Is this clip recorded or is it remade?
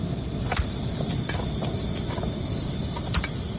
recorded